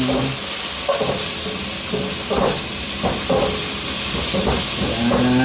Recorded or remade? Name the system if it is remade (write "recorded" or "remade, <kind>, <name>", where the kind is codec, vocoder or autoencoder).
recorded